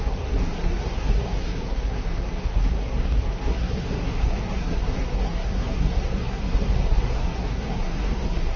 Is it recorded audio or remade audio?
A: remade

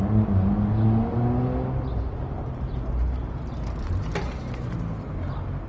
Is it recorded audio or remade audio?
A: recorded